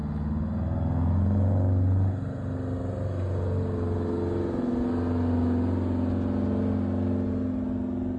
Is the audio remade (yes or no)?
no